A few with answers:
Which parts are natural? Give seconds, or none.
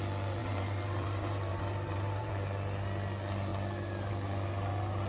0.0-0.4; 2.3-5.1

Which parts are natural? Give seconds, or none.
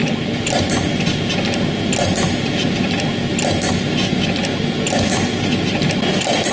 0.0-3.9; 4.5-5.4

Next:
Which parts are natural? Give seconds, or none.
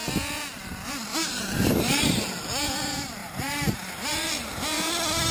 0.0-1.1; 2.0-3.2; 4.1-5.3